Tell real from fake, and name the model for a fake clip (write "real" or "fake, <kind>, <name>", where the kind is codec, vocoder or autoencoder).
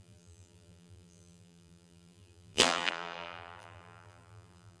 fake, vocoder, BigVGAN v2